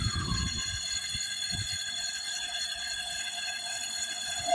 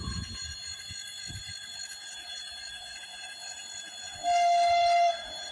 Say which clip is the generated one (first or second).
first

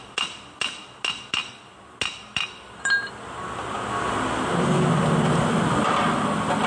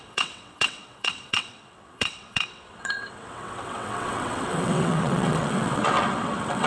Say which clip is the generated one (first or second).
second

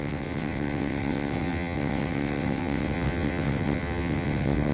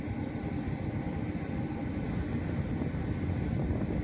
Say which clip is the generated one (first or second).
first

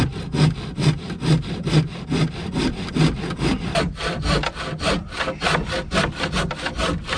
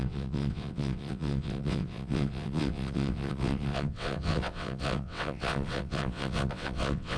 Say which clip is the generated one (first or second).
second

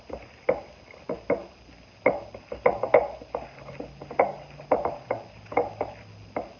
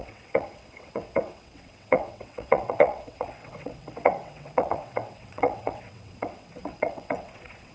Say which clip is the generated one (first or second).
second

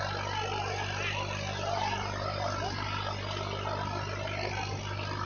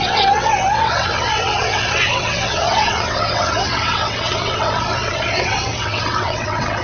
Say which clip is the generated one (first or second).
second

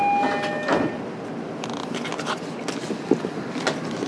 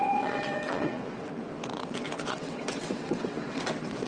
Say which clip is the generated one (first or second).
second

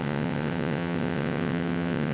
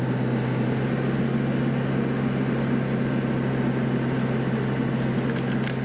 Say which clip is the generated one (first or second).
first